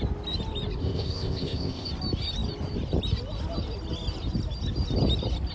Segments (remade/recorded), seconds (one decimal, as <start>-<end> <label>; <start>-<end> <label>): 0.0-0.8 recorded; 0.8-1.9 remade; 1.9-5.5 recorded